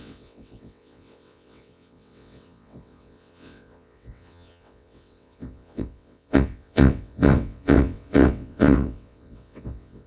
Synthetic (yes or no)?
yes